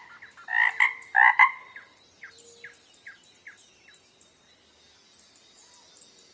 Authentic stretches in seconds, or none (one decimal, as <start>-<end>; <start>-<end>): 0.0-6.3